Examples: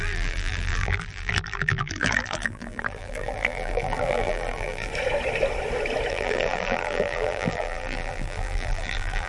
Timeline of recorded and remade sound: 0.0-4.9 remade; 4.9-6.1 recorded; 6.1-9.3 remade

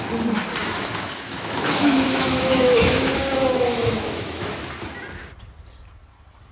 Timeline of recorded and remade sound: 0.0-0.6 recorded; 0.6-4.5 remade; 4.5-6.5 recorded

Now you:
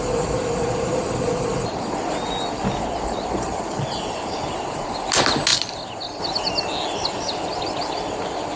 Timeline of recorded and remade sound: 0.0-8.6 recorded

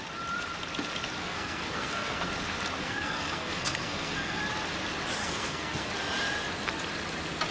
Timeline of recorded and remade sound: 0.0-1.2 recorded; 1.2-2.3 remade; 2.3-2.8 recorded; 2.8-4.4 remade; 4.4-5.2 recorded; 5.2-5.9 remade; 5.9-7.5 recorded

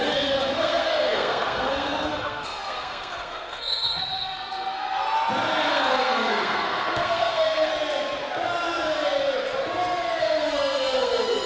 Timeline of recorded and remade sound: 0.0-5.0 remade; 5.0-5.7 recorded; 5.7-7.7 remade; 7.7-10.2 recorded; 10.2-11.5 remade